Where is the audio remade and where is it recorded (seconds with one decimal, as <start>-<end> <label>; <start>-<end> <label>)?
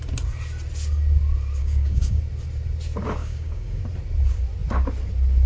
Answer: 0.0-1.6 recorded; 1.6-2.2 remade; 2.2-3.2 recorded; 3.2-3.8 remade; 3.8-5.5 recorded